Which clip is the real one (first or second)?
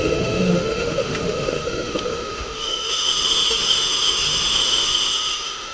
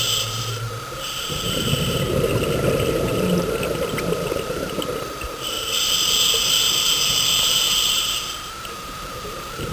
second